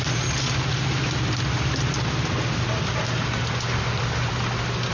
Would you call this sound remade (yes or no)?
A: no